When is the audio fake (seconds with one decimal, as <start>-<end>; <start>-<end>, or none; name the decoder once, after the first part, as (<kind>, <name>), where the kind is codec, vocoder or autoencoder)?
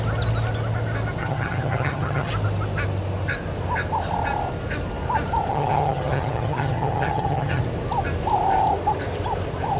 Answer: 1.2-2.3 (vocoder, HiFi-GAN); 5.5-7.6